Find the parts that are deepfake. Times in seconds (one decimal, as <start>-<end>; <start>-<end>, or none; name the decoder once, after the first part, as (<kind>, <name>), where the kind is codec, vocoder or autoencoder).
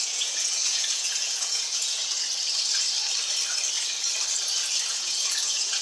0.0-2.0 (vocoder, Vocos); 4.9-5.8